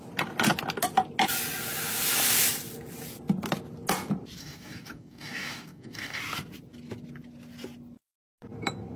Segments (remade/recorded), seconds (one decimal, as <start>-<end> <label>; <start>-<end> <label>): 0.0-4.4 recorded; 4.4-6.2 remade; 6.2-9.0 recorded

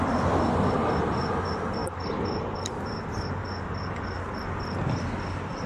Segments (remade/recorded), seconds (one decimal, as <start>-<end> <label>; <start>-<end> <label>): 0.0-5.7 recorded

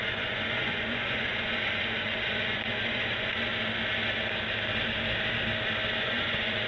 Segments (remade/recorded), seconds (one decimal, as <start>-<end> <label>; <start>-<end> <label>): 0.0-3.5 remade; 3.5-6.0 recorded; 6.0-6.7 remade

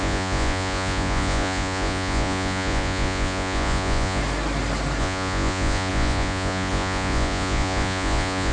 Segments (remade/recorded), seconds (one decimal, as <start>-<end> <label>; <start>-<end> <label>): 0.0-4.2 remade; 4.2-5.0 recorded; 5.0-8.5 remade

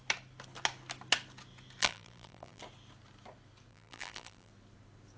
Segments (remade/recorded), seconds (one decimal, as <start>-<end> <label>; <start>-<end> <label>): 0.0-1.8 recorded; 1.8-2.6 remade; 2.6-3.7 recorded; 3.7-4.5 remade; 4.5-5.2 recorded

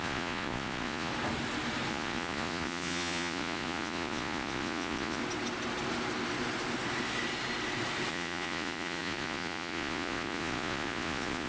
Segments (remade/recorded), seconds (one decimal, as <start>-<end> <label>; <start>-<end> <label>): 0.0-1.1 remade; 1.1-1.9 recorded; 1.9-5.2 remade; 5.2-8.1 recorded; 8.1-11.5 remade

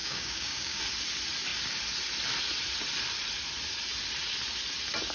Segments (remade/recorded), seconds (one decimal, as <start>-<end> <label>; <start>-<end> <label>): 0.0-0.8 remade; 0.8-5.1 recorded

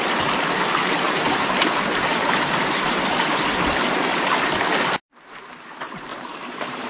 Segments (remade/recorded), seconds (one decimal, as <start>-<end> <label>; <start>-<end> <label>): 0.0-0.8 recorded; 0.8-3.9 remade; 3.9-6.1 recorded; 6.1-6.9 remade